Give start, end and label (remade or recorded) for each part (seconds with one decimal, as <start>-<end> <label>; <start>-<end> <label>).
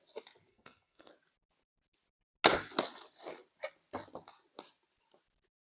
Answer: 0.0-0.5 recorded; 0.5-1.1 remade; 1.1-5.6 recorded